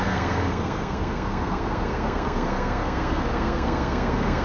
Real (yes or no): no